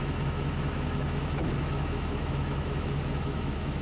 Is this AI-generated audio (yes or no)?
yes